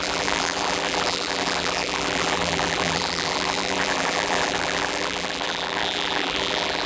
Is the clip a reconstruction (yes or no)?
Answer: yes